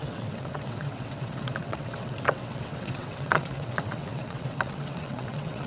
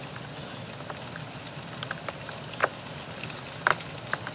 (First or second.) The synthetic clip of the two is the first